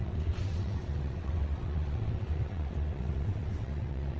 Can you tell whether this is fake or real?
fake